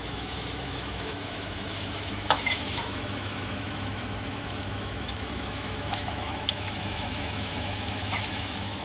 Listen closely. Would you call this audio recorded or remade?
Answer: remade